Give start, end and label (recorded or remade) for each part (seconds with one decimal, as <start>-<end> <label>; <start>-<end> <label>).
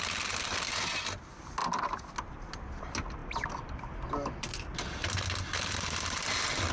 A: 0.0-6.7 recorded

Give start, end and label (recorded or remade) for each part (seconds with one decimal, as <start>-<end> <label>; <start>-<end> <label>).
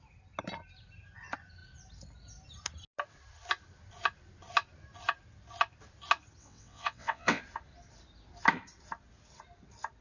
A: 0.0-6.4 recorded; 6.4-7.4 remade; 7.4-10.0 recorded